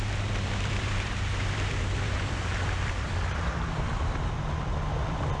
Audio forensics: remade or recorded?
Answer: remade